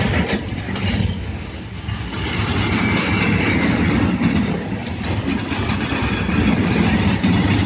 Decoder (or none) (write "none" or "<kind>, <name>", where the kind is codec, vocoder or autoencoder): none